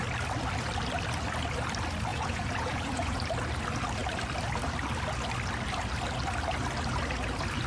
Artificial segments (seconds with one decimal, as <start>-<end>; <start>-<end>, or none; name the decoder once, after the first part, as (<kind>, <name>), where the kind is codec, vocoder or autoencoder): 2.1-3.2 (vocoder, Vocos)